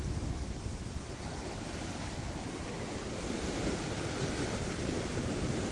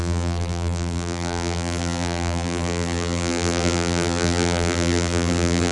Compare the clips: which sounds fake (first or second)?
second